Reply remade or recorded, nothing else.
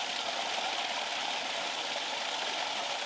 recorded